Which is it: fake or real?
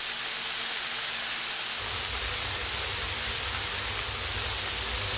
real